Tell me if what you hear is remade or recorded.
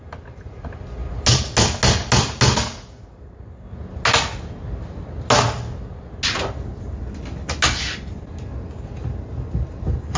recorded